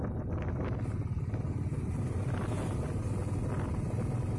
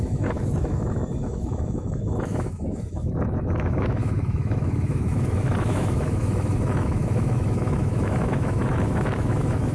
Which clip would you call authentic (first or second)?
first